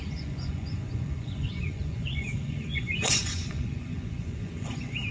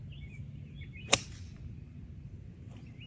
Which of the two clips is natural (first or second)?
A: second